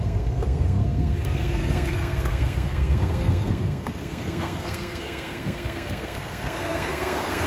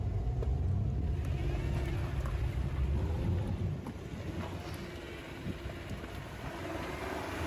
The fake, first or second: first